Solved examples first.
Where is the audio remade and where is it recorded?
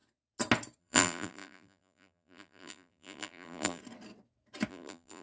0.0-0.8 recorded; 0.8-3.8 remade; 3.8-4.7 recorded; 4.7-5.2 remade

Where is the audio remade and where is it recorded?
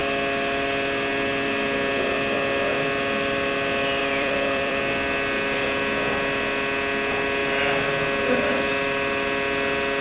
0.0-4.0 recorded; 4.0-4.8 remade; 4.8-10.0 recorded